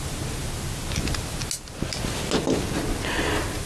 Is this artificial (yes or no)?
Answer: no